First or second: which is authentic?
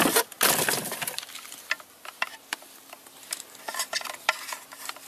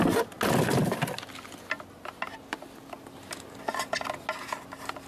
second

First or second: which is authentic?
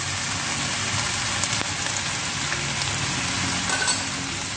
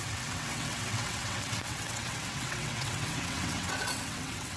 first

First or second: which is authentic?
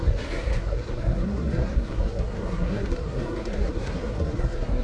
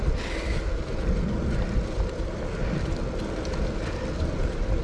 second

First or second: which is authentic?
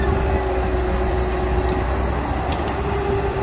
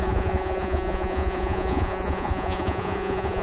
first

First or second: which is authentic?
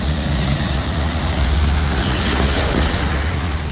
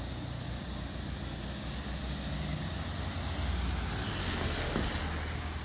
second